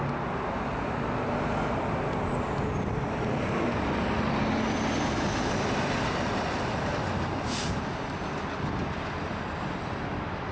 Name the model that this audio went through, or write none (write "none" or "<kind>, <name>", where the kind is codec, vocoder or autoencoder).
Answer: none